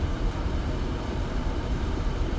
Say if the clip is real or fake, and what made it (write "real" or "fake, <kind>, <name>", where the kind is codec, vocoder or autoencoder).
fake, vocoder, BigVGAN v2